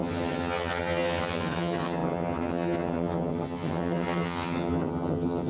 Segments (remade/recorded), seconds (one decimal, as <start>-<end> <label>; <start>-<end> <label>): 0.0-5.5 remade

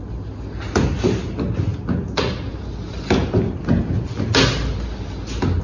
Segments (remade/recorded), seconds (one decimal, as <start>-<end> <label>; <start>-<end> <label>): 0.0-5.6 recorded

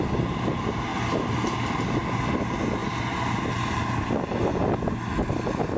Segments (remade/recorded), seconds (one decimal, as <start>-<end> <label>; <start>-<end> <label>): 0.0-5.8 recorded

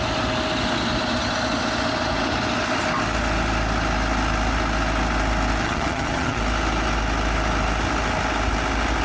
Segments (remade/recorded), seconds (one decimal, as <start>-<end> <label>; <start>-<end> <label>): 0.0-5.6 recorded; 5.6-6.4 remade; 6.4-9.0 recorded

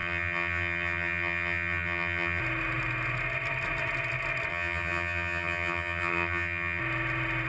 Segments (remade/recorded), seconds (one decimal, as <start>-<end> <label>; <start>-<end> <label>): 0.0-2.4 remade; 2.4-4.5 recorded; 4.5-6.8 remade; 6.8-7.5 recorded

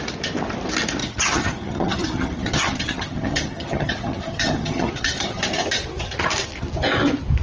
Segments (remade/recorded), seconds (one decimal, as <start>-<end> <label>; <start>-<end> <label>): 0.0-1.0 recorded; 1.0-5.4 remade; 5.4-7.4 recorded

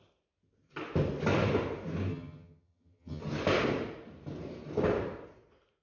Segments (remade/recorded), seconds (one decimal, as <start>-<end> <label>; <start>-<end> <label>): 0.0-2.1 recorded; 2.1-3.2 remade; 3.2-5.8 recorded